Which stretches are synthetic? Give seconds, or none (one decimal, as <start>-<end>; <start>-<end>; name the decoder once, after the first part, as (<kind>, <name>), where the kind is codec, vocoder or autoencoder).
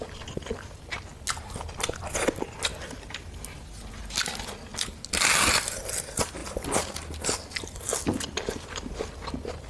none